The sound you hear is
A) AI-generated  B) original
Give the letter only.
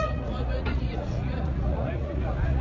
A